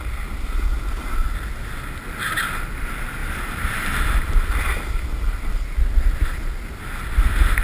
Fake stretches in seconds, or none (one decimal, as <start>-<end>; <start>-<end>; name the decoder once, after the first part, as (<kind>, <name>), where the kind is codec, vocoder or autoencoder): 3.2-4.0 (vocoder, BigVGAN v2)